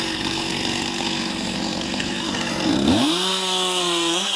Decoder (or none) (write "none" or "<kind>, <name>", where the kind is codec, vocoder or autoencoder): codec, SNAC